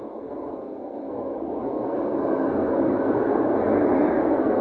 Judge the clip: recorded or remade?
remade